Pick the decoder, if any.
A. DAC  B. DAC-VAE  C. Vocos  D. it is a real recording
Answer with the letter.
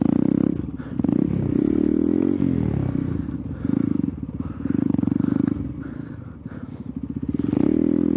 D